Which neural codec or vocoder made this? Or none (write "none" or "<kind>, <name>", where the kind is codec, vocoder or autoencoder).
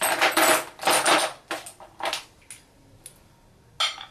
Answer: none